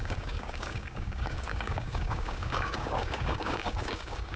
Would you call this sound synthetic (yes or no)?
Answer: yes